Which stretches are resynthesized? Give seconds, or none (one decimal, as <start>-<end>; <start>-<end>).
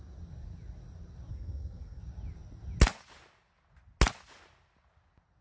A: 1.3-2.0